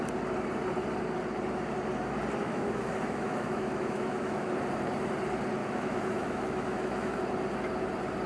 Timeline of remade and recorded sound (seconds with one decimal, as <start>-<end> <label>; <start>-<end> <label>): 0.0-2.4 recorded; 2.4-4.5 remade; 4.5-5.6 recorded; 5.6-7.2 remade; 7.2-8.3 recorded